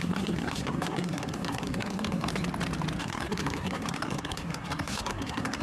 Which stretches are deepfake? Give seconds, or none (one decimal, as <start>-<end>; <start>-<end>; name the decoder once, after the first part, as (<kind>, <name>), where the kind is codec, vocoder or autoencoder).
0.0-2.3 (codec, SNAC); 3.0-5.6